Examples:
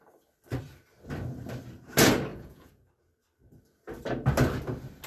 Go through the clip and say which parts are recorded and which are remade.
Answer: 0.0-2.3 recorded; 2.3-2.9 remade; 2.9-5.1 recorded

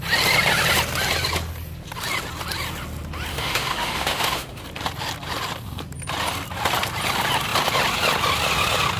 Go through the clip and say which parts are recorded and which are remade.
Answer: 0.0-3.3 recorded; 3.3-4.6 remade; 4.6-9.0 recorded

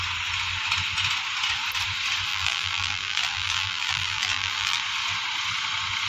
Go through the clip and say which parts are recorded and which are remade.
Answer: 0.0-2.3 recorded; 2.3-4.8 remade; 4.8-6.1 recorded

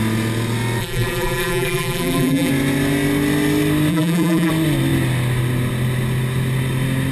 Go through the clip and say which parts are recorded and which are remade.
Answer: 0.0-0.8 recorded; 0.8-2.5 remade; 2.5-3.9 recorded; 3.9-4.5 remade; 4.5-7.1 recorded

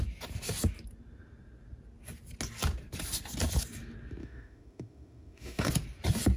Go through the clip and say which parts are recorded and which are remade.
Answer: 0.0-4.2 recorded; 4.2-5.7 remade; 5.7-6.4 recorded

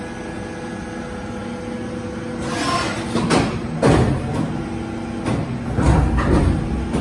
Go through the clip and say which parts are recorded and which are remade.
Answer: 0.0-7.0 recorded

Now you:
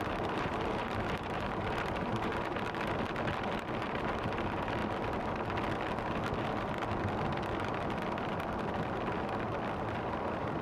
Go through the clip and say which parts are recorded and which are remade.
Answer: 0.0-2.3 remade; 2.3-3.8 recorded; 3.8-4.8 remade; 4.8-10.0 recorded; 10.0-10.6 remade

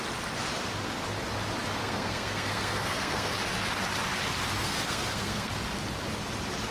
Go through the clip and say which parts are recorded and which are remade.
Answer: 0.0-1.8 recorded; 1.8-3.3 remade; 3.3-4.6 recorded; 4.6-5.5 remade; 5.5-6.7 recorded